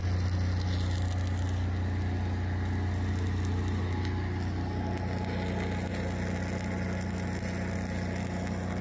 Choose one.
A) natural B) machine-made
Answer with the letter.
A